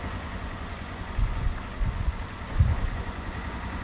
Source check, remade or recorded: remade